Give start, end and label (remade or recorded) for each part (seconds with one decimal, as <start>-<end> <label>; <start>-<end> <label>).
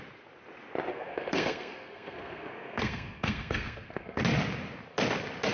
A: 0.0-0.9 recorded; 0.9-4.2 remade; 4.2-5.5 recorded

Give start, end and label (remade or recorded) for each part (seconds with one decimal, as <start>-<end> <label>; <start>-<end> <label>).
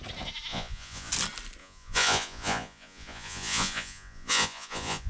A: 0.0-0.5 recorded; 0.5-1.1 remade; 1.1-1.6 recorded; 1.6-5.1 remade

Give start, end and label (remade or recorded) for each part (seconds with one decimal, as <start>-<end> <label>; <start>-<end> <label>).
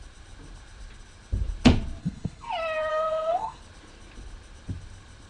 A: 0.0-2.0 recorded; 2.0-2.5 remade; 2.5-2.9 recorded; 2.9-3.6 remade; 3.6-5.3 recorded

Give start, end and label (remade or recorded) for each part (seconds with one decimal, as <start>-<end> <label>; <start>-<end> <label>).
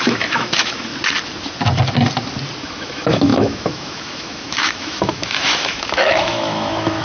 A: 0.0-0.9 remade; 0.9-2.6 recorded; 2.6-7.0 remade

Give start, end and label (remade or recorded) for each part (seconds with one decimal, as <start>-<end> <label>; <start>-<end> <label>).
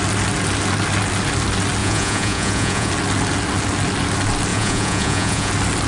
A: 0.0-1.8 recorded; 1.8-2.9 remade; 2.9-4.5 recorded; 4.5-5.5 remade; 5.5-5.9 recorded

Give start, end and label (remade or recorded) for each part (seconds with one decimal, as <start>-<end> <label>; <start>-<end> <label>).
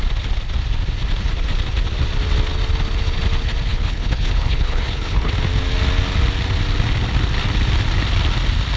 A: 0.0-3.7 recorded; 3.7-5.3 remade; 5.3-8.8 recorded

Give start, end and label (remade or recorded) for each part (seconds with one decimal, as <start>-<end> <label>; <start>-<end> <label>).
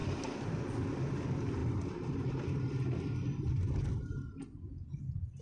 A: 0.0-5.4 recorded